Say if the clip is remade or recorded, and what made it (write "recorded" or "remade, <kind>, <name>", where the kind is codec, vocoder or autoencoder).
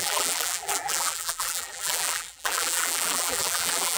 remade, vocoder, BigVGAN v2